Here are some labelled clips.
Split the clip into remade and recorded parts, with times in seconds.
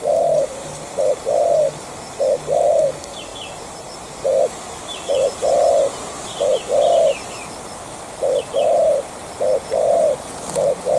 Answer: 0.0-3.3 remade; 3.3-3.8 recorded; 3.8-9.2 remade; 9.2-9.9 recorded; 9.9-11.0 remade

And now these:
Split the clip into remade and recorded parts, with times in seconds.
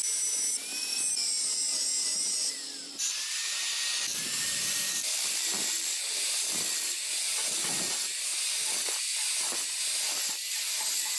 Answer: 0.0-3.4 remade; 3.4-4.4 recorded; 4.4-8.3 remade; 8.3-9.7 recorded; 9.7-11.2 remade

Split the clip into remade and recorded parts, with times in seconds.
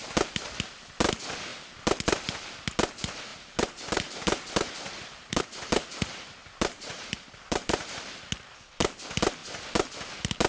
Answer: 0.0-3.3 recorded; 3.3-5.4 remade; 5.4-6.4 recorded; 6.4-8.2 remade; 8.2-10.5 recorded